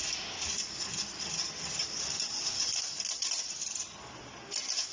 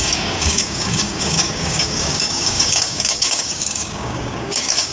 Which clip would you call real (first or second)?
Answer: first